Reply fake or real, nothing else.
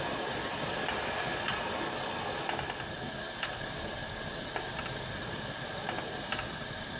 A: fake